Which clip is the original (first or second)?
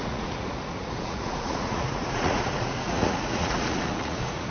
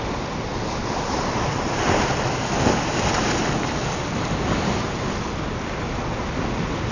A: second